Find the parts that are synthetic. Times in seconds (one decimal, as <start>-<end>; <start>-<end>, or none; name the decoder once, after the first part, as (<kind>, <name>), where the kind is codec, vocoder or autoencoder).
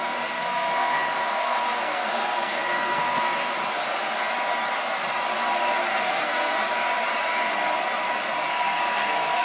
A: 0.0-3.5 (codec, SNAC); 6.0-6.6; 8.5-9.4